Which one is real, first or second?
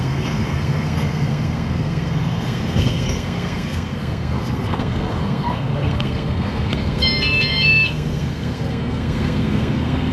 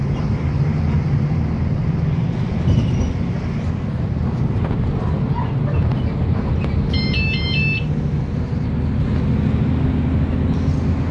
second